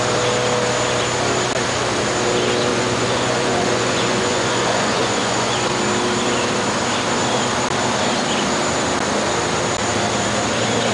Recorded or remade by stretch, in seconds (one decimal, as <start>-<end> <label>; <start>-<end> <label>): 0.0-2.7 recorded; 2.7-5.8 remade; 5.8-10.9 recorded